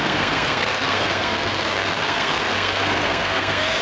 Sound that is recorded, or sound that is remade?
remade